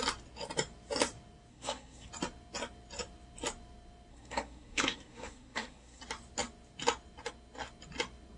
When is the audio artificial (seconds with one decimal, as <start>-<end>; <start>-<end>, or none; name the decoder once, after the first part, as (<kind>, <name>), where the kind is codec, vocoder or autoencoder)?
1.5-2.1 (codec, SNAC); 4.1-6.0